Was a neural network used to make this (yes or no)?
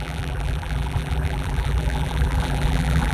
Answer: yes